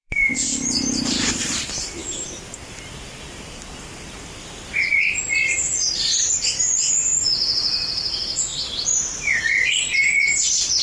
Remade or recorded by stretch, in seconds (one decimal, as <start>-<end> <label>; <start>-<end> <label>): 0.0-2.0 remade; 2.0-2.7 recorded; 2.7-4.9 remade; 4.9-7.9 recorded; 7.9-10.8 remade